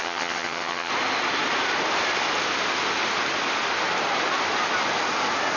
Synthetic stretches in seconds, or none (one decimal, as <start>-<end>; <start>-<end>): 0.0-0.9